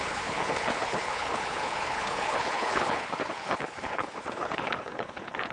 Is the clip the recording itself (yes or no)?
no